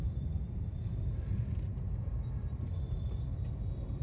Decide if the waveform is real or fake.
real